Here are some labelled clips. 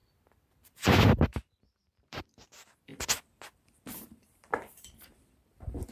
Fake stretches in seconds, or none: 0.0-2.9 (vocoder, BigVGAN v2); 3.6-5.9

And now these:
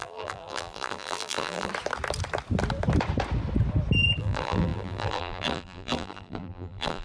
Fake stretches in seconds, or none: 0.0-1.7 (vocoder, BigVGAN v2); 4.2-7.0

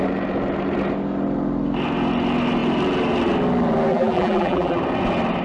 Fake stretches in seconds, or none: 3.9-4.8 (vocoder, BigVGAN v2)

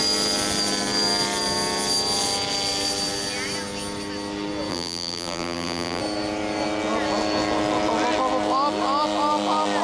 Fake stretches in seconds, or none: 4.7-6.0 (vocoder, BigVGAN v2)

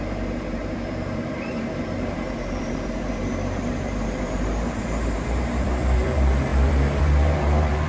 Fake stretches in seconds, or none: 0.0-7.9 (vocoder, BigVGAN v2)

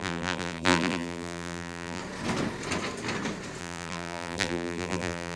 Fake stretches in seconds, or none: 0.0-2.0 (vocoder, BigVGAN v2); 3.6-5.4